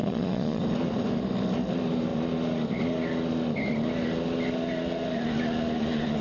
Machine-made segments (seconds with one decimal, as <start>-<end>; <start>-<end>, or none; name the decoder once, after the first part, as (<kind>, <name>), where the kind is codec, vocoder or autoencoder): 0.0-0.6 (vocoder, Vocos)